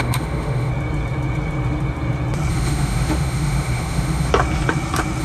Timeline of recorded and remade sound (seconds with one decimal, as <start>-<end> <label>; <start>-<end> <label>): 0.0-0.7 remade; 0.7-2.5 recorded; 2.5-4.3 remade; 4.3-5.2 recorded